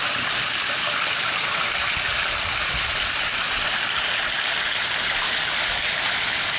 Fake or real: real